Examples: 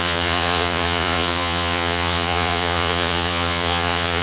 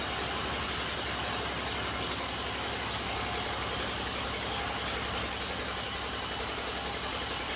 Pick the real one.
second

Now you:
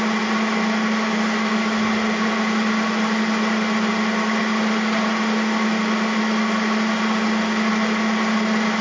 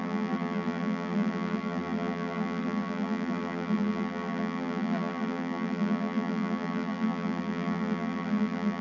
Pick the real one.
first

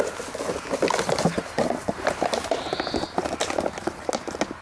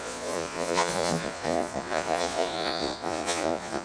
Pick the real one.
first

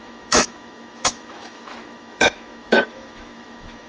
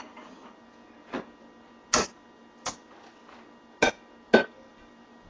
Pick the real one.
second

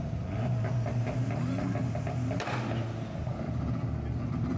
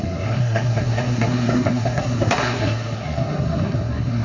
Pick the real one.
first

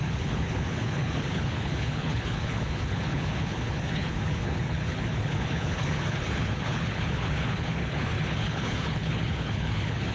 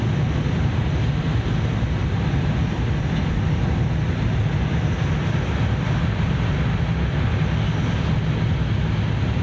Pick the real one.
second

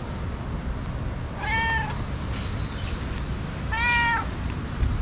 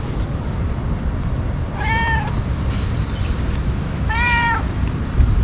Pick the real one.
first